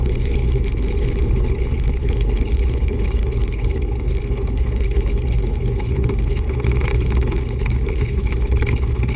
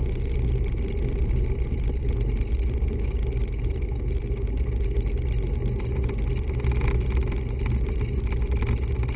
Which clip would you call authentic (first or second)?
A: second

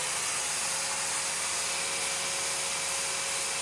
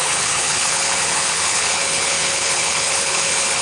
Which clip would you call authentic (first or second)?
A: first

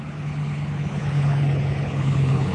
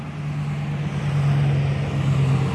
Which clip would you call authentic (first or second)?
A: second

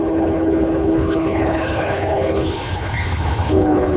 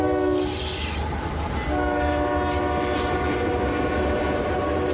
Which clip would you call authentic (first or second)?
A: second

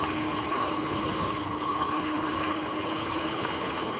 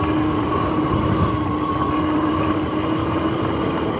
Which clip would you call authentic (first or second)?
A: second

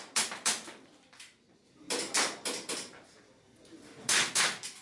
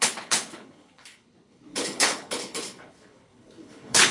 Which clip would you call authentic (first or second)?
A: first